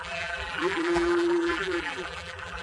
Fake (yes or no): yes